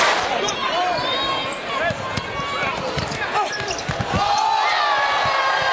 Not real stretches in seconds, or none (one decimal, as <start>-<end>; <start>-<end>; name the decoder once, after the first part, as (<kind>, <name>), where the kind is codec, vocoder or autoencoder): none